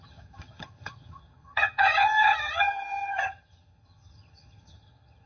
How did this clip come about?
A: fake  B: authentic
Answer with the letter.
A